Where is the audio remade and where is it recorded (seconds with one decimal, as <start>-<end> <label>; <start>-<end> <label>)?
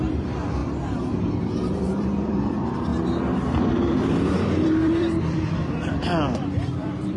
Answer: 0.0-2.9 remade; 2.9-3.6 recorded; 3.6-7.2 remade